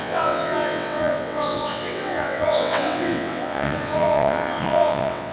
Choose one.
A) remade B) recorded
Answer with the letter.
A